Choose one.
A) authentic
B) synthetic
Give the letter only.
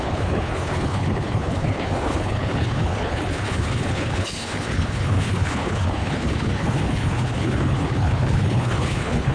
B